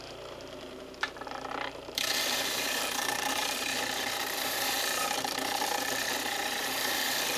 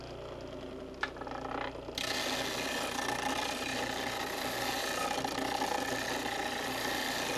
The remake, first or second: first